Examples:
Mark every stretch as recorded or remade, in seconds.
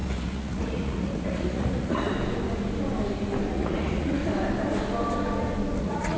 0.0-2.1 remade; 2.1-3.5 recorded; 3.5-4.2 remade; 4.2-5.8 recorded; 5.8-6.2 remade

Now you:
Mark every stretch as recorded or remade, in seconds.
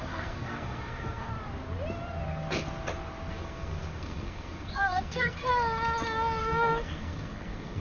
0.0-1.3 remade; 1.3-3.3 recorded; 3.3-5.5 remade; 5.5-6.4 recorded; 6.4-7.8 remade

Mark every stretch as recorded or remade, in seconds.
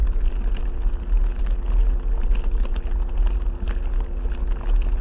0.0-5.0 recorded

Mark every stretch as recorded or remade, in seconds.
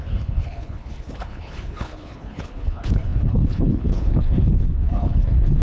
0.0-5.6 remade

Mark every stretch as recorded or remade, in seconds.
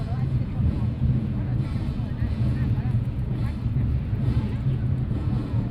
0.0-1.5 remade; 1.5-2.2 recorded; 2.2-3.4 remade; 3.4-4.1 recorded; 4.1-5.7 remade